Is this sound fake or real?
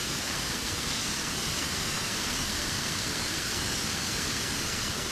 fake